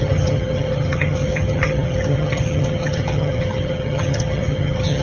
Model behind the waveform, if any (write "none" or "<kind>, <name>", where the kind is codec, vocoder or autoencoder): vocoder, HiFi-GAN